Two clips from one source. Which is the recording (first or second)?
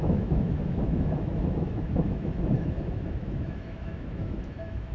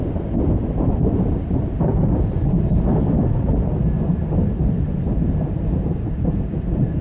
second